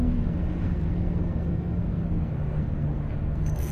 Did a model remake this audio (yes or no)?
yes